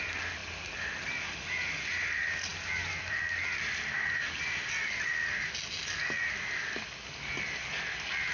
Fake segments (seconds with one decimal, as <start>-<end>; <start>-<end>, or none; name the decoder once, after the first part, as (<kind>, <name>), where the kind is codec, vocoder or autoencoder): none